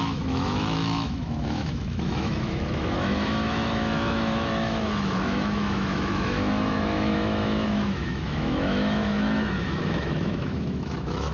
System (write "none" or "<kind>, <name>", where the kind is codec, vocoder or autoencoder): autoencoder, DAC-VAE